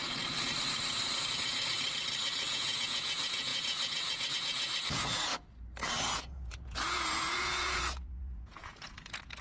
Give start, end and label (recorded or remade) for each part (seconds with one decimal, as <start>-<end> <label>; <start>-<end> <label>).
0.0-2.2 recorded; 2.2-5.3 remade; 5.3-6.0 recorded; 6.0-9.4 remade